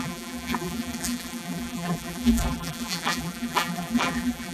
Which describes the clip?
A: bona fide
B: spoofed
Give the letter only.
B